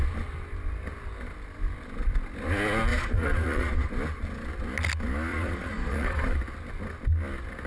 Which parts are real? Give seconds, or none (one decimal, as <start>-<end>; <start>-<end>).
0.0-2.9; 3.9-5.3; 6.3-7.7